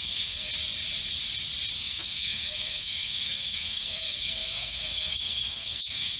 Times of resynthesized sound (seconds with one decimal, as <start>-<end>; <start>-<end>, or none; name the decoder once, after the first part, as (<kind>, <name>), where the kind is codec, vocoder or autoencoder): 0.0-0.5 (codec, SNAC); 1.8-6.2